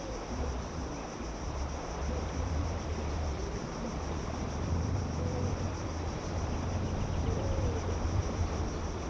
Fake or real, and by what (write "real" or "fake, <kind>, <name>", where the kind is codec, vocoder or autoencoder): fake, vocoder, BigVGAN v2